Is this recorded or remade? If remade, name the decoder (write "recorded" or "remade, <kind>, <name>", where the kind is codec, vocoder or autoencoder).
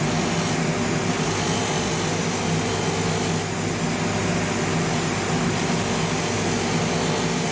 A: recorded